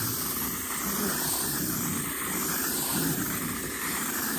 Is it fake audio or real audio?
fake